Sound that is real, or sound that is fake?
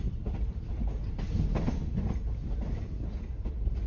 real